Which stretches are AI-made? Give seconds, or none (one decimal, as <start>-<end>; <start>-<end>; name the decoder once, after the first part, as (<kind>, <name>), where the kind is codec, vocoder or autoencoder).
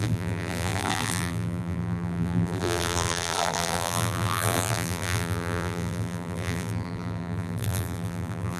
0.0-8.6 (vocoder, BigVGAN v2)